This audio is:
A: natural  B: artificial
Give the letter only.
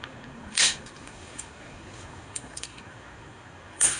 B